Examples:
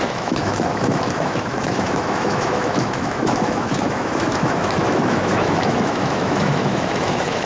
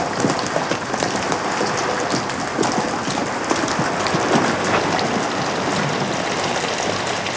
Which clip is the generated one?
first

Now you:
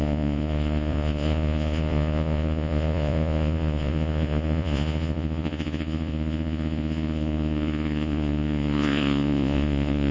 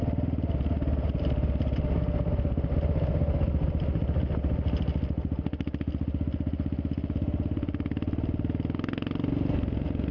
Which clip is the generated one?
first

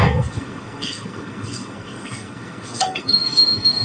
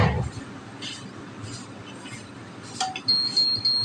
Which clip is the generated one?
first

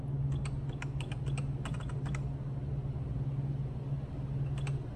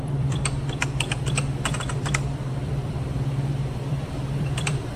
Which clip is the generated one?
second